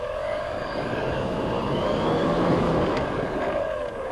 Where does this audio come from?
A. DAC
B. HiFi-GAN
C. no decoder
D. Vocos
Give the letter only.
A